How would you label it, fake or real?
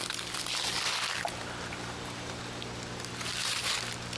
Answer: real